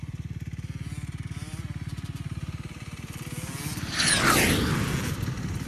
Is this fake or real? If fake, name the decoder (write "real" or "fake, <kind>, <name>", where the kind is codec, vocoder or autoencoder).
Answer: real